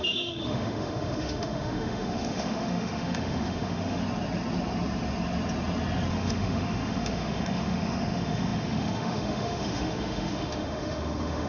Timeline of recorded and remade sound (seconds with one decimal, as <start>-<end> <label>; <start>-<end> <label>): 0.0-4.0 remade; 4.0-6.1 recorded; 6.1-11.5 remade